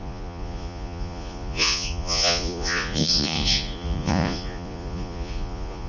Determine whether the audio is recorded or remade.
remade